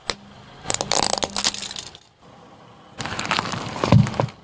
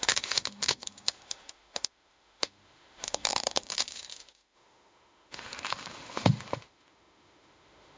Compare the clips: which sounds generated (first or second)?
second